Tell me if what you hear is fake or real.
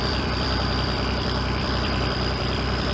fake